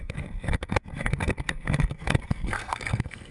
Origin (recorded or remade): remade